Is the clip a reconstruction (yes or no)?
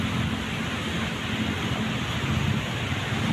no